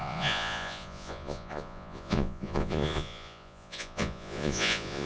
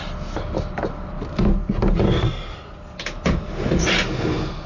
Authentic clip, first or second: second